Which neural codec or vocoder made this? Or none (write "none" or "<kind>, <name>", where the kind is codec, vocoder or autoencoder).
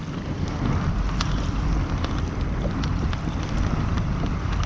none